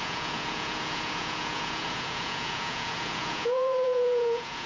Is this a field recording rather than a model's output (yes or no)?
no